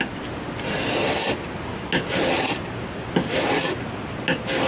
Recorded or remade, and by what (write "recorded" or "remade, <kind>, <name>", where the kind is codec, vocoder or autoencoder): recorded